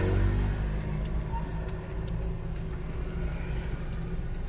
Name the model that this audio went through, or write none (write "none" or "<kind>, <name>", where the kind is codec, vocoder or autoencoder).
none